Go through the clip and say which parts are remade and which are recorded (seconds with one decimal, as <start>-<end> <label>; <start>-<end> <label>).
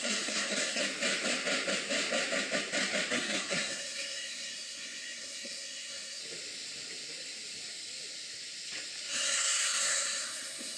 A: 0.0-0.8 remade; 0.8-3.1 recorded; 3.1-6.2 remade; 6.2-9.1 recorded; 9.1-10.8 remade